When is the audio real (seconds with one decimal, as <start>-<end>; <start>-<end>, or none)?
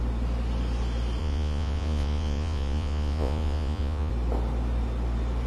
0.0-1.2; 4.1-5.5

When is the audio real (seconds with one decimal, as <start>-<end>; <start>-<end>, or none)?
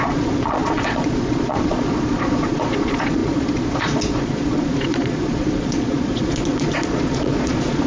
none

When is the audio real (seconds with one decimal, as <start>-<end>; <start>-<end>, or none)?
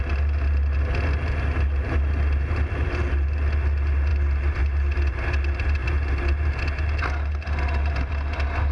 0.0-8.7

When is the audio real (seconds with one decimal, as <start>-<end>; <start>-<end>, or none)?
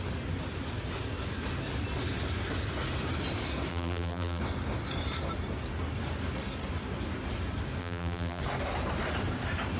0.0-3.7; 4.4-7.8; 8.4-9.8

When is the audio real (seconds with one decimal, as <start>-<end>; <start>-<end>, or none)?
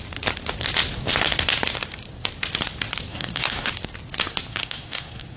0.0-3.1; 3.7-4.5